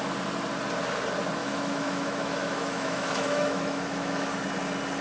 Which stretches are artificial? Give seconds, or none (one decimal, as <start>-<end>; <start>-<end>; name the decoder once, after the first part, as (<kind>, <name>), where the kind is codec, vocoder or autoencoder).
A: 1.4-4.4 (autoencoder, DAC-VAE)